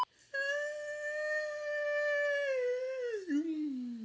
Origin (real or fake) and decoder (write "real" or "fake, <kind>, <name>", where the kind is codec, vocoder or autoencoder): real